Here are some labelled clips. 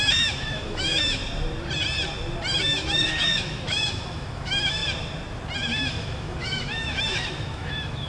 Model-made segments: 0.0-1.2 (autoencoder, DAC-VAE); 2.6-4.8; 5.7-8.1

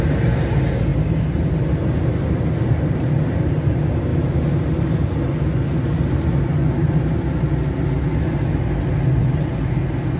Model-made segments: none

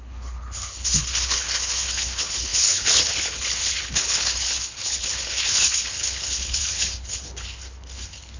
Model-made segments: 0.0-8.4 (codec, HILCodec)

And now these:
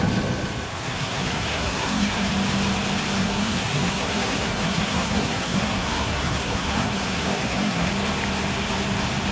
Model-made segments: 0.7-2.3 (codec, SNAC); 3.2-7.9

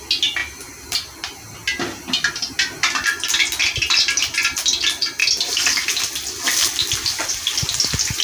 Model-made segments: none